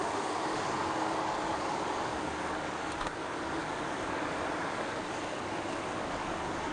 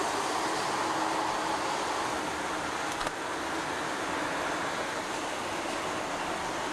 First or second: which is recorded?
second